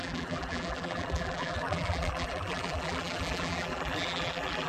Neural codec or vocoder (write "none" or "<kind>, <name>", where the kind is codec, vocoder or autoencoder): vocoder, BigVGAN v2